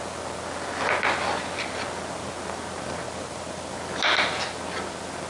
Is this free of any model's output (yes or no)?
yes